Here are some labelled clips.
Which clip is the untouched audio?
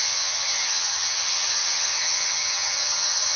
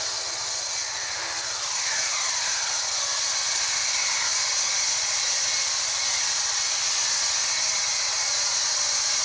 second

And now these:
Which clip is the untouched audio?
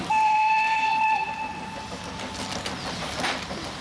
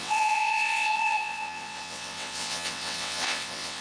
first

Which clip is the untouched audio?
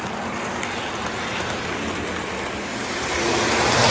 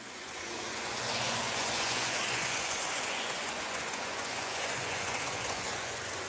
first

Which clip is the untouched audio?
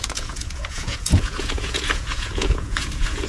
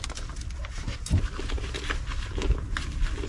second